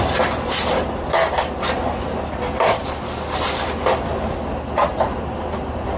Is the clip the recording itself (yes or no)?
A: yes